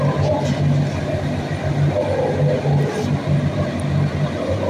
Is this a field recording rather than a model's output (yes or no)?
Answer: yes